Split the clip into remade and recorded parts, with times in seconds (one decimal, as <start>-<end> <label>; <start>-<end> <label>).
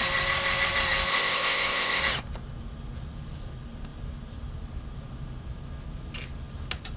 0.0-1.1 recorded; 1.1-2.0 remade; 2.0-7.0 recorded